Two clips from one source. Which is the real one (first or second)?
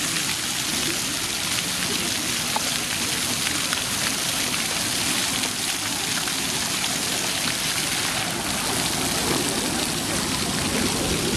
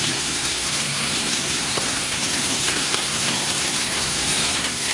first